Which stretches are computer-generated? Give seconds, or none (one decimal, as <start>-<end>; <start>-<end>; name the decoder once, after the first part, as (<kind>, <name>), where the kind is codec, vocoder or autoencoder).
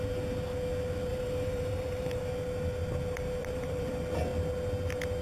1.1-2.2 (vocoder, BigVGAN v2); 3.4-3.9